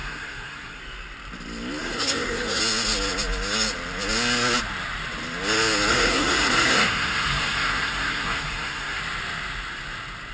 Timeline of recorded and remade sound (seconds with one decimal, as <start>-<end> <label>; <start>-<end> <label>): 0.0-0.8 remade; 0.8-1.8 recorded; 1.8-2.6 remade; 2.6-5.9 recorded; 5.9-9.0 remade; 9.0-10.3 recorded